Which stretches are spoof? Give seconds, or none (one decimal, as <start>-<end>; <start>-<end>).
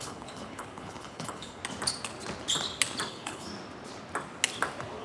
0.0-1.6; 3.1-3.5